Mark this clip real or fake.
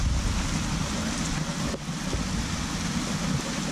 real